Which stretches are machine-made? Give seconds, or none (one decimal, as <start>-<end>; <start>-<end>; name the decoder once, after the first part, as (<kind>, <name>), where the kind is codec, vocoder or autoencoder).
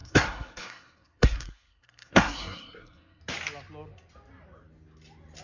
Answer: 0.0-3.2 (codec, SNAC)